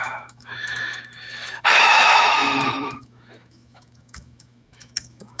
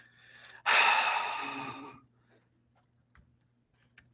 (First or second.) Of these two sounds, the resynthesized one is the first